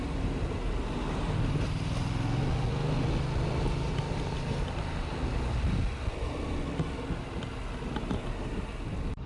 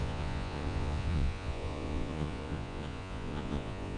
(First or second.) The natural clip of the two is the first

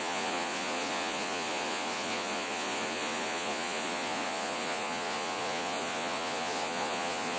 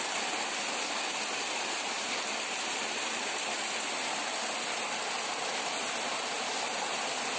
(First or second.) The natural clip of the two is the second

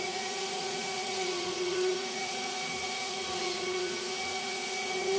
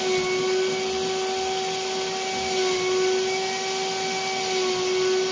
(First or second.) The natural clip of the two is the second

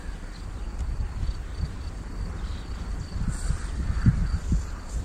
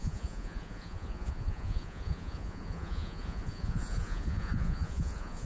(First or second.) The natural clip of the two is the first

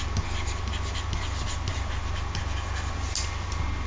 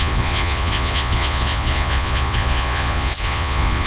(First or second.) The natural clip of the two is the first